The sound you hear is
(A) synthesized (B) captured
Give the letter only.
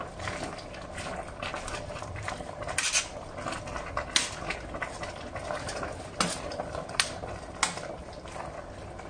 B